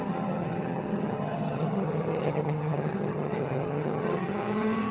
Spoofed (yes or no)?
yes